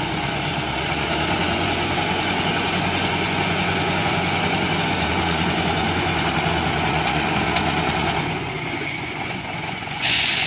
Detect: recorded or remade remade